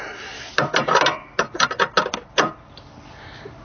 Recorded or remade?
recorded